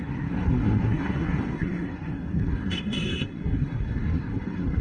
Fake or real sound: fake